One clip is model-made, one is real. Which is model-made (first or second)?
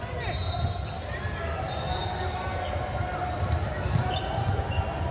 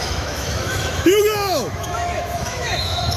second